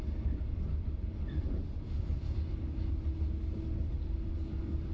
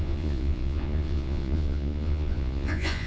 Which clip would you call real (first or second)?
first